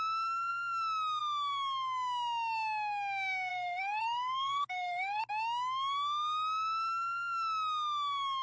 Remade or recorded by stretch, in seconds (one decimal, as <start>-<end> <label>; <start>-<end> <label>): 0.0-3.5 recorded; 3.5-5.2 remade; 5.2-8.4 recorded